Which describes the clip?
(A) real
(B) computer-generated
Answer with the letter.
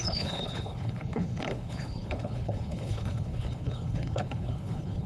B